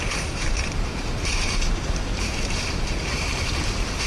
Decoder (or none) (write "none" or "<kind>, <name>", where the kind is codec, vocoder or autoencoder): vocoder, BigVGAN v2